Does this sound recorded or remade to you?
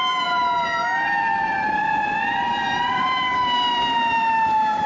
remade